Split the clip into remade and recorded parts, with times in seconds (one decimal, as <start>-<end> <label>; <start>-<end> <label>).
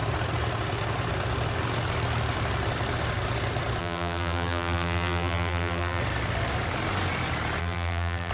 0.0-3.8 recorded; 3.8-6.0 remade; 6.0-7.6 recorded; 7.6-8.3 remade